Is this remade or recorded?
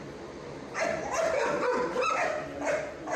recorded